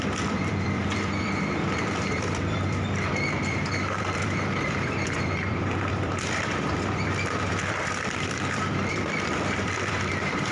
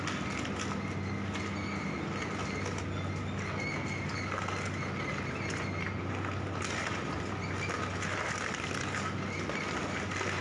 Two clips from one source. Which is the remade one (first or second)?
first